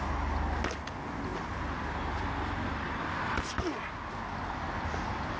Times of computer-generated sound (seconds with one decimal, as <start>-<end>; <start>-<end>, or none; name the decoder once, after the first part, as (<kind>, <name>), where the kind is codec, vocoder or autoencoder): none

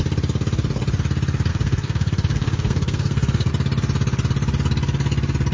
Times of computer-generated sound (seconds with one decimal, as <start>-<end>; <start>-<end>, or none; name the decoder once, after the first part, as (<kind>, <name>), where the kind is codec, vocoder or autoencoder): 1.5-3.5 (codec, SNAC)

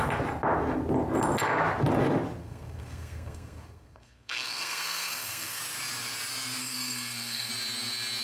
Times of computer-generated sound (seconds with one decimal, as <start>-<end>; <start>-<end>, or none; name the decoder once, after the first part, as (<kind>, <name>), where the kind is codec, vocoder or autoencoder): 2.4-5.6 (codec, SNAC); 6.6-7.5

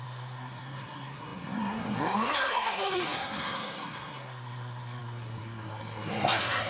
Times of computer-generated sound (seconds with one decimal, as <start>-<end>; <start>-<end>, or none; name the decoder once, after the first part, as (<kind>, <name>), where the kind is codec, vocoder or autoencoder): 0.0-6.7 (codec, SNAC)

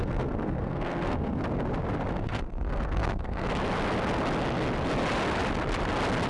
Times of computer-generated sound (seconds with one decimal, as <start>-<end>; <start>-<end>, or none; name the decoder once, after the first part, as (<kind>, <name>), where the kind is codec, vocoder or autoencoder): 0.0-1.4 (codec, SNAC); 2.1-3.5

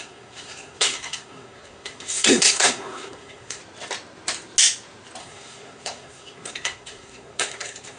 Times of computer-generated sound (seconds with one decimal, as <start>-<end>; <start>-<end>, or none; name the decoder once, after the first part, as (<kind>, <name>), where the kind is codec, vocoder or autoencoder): 0.0-3.6 (codec, SNAC); 5.2-8.0